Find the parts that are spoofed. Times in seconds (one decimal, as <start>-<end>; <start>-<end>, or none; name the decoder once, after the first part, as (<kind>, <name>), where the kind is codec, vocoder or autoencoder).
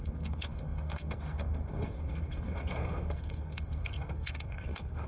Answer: 0.0-5.1 (codec, SNAC)